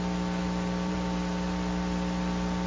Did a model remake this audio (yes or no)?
no